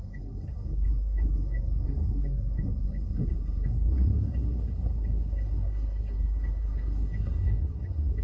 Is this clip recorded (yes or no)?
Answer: no